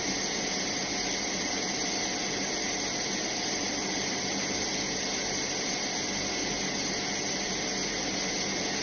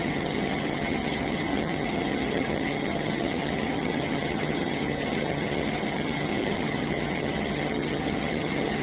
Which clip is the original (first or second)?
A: first